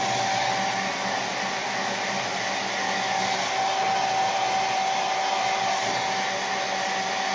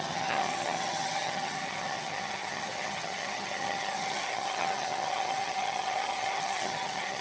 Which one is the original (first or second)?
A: first